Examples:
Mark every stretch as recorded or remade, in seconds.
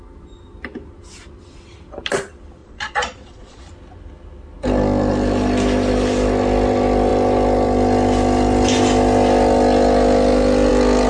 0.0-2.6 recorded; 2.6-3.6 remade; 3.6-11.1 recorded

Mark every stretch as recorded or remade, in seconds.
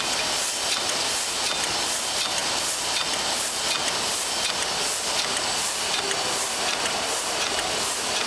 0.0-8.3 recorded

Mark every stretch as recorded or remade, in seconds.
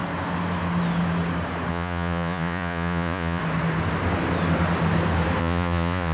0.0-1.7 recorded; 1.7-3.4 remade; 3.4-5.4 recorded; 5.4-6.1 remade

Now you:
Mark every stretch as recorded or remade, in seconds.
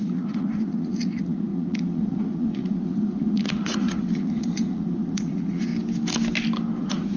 0.0-5.7 remade; 5.7-6.8 recorded; 6.8-7.2 remade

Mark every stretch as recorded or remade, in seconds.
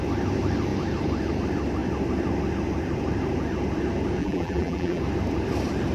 0.0-4.2 recorded; 4.2-5.0 remade; 5.0-5.9 recorded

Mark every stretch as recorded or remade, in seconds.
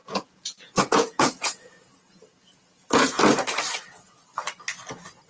0.0-3.2 remade; 3.2-5.3 recorded